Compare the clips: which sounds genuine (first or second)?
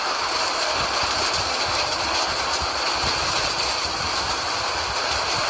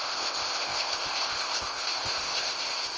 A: first